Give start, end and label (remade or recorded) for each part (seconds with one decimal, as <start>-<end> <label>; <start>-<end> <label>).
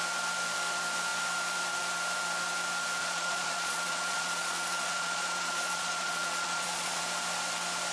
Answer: 0.0-3.0 recorded; 3.0-7.0 remade; 7.0-7.9 recorded